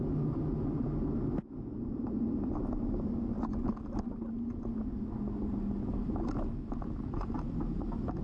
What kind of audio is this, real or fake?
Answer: real